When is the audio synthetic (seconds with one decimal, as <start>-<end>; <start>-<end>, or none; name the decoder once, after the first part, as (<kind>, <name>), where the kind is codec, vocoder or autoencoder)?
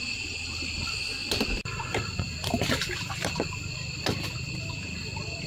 none